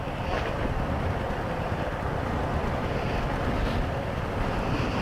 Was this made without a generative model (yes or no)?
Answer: yes